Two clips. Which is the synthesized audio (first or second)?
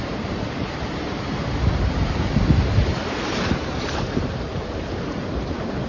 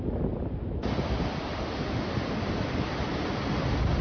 first